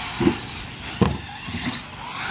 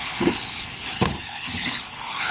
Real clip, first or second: first